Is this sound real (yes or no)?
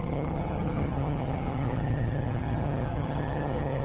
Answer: no